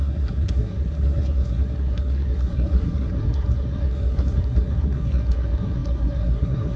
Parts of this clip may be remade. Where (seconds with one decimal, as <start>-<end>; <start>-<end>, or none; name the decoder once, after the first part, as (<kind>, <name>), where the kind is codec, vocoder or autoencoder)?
0.0-6.8 (codec, SNAC)